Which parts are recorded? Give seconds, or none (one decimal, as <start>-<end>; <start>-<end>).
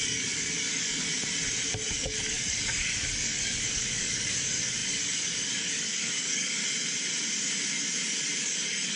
1.1-1.9; 6.6-8.4